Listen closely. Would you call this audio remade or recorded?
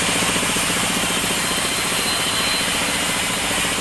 recorded